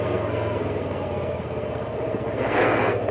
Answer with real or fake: fake